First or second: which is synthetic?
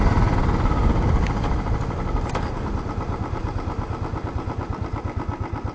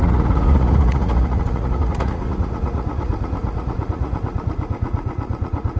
second